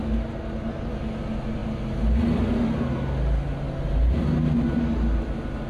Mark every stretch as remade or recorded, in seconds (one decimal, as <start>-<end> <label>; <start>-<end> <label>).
0.0-5.7 recorded